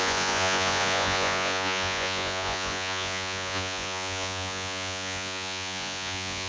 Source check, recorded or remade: remade